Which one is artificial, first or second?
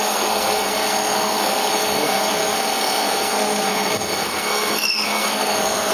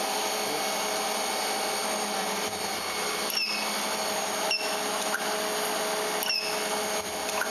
first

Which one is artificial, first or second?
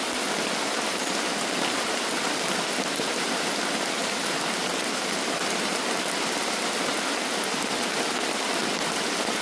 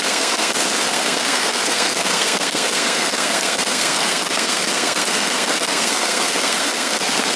second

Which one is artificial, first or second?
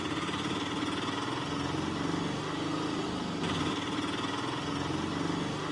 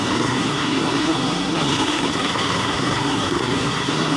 second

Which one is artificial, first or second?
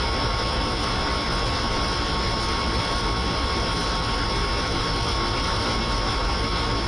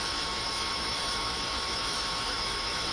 second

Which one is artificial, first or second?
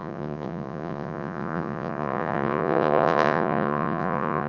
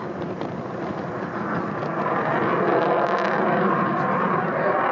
first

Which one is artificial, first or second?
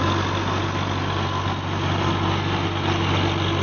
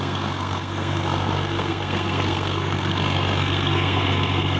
second